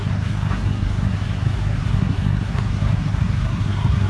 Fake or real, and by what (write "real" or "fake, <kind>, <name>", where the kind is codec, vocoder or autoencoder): fake, codec, SNAC